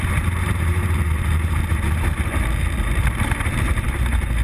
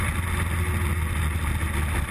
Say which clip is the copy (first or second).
first